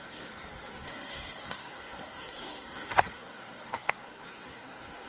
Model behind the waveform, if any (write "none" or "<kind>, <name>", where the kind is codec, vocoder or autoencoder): codec, SNAC